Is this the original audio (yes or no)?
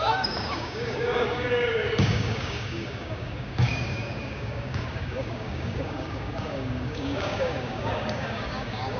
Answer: no